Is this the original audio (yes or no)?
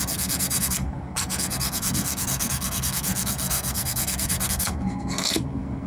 no